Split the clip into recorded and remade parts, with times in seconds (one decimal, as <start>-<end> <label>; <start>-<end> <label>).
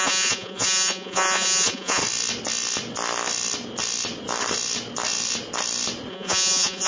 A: 0.0-2.0 remade; 2.0-6.1 recorded; 6.1-6.9 remade